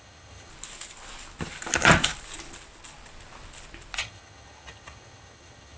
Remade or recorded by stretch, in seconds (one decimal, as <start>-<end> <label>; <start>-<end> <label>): 0.0-0.5 remade; 0.5-4.0 recorded; 4.0-5.8 remade

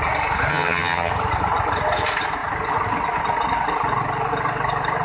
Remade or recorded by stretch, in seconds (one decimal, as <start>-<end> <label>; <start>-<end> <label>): 0.0-0.5 recorded; 0.5-1.1 remade; 1.1-5.0 recorded

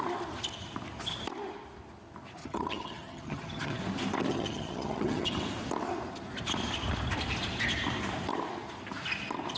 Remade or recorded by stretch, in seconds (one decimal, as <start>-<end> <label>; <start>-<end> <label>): 0.0-2.4 recorded; 2.4-3.8 remade; 3.8-4.3 recorded; 4.3-5.4 remade; 5.4-9.6 recorded

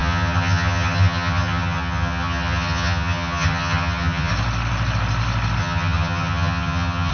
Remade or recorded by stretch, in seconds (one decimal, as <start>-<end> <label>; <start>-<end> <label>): 0.0-4.3 remade; 4.3-5.6 recorded; 5.6-7.1 remade

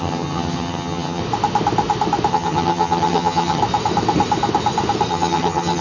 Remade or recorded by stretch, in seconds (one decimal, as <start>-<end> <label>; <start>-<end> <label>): 0.0-1.2 remade; 1.2-2.3 recorded; 2.3-3.6 remade; 3.6-5.1 recorded; 5.1-5.8 remade

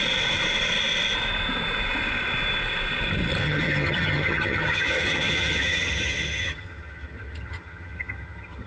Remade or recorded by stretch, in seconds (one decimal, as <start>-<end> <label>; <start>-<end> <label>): 0.0-3.4 recorded; 3.4-8.7 remade

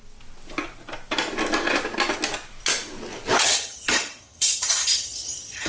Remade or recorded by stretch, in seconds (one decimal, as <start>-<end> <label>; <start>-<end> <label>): 0.0-3.4 recorded; 3.4-5.7 remade

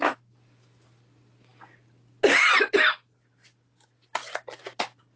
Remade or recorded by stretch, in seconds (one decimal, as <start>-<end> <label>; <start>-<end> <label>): 0.0-5.2 recorded